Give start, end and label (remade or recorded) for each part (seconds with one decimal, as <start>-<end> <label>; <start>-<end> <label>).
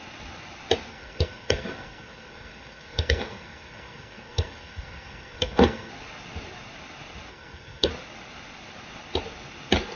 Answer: 0.0-0.9 recorded; 0.9-5.9 remade; 5.9-7.3 recorded; 7.3-7.9 remade; 7.9-10.0 recorded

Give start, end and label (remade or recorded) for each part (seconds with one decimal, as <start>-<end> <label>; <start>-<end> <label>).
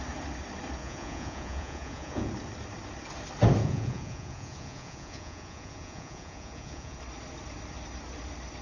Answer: 0.0-0.8 recorded; 0.8-2.3 remade; 2.3-3.6 recorded; 3.6-7.0 remade; 7.0-8.6 recorded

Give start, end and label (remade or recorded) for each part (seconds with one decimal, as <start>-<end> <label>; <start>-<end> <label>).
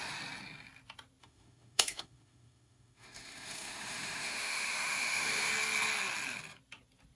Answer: 0.0-1.2 recorded; 1.2-5.5 remade; 5.5-7.2 recorded